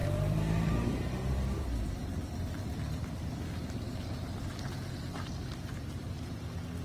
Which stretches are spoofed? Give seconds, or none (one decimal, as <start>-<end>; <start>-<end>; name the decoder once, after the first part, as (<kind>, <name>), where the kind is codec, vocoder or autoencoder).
0.0-0.7 (vocoder, BigVGAN v2)